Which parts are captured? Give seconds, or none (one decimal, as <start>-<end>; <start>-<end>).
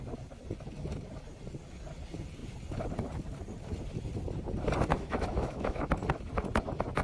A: 0.0-4.9; 5.9-7.0